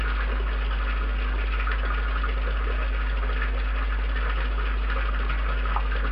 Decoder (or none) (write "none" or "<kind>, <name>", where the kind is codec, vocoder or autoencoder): none